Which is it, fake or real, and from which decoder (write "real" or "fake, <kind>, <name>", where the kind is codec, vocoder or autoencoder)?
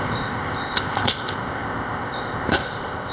fake, codec, ZipCodec